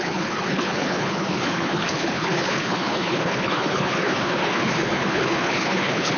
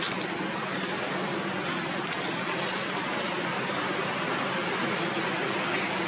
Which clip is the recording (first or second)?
second